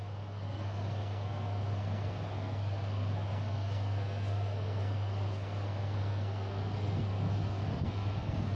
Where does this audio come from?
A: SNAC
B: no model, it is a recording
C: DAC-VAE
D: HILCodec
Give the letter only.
A